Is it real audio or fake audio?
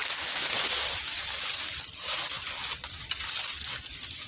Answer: real